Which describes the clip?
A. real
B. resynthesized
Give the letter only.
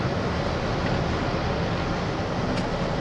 A